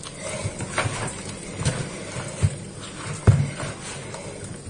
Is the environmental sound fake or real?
real